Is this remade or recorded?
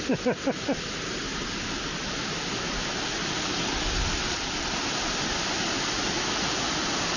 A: recorded